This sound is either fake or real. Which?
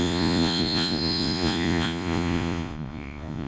fake